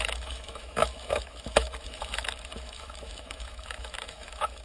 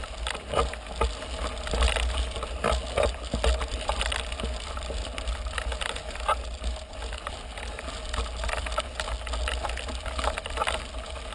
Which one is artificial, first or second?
first